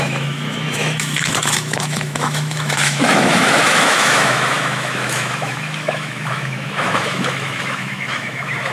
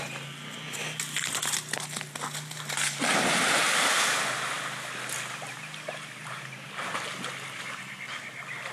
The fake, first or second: first